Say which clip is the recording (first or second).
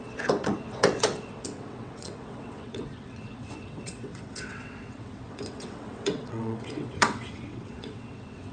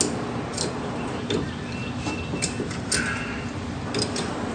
second